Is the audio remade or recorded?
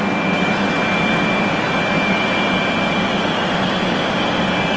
recorded